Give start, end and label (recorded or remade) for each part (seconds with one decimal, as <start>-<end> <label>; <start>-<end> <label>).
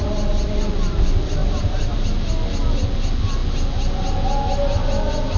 0.0-1.4 recorded; 1.4-2.2 remade; 2.2-5.4 recorded